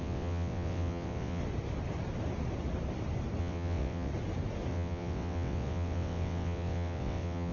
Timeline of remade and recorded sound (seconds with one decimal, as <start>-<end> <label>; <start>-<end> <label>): 0.0-1.4 remade; 1.4-3.4 recorded; 3.4-4.1 remade; 4.1-4.7 recorded; 4.7-7.5 remade